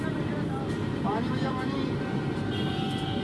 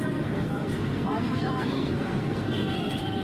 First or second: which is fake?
second